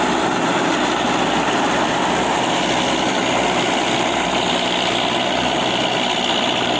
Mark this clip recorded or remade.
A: recorded